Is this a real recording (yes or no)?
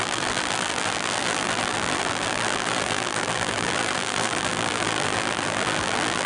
no